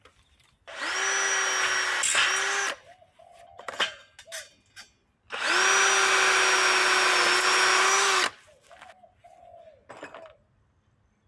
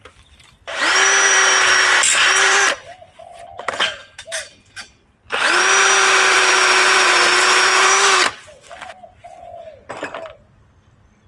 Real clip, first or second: first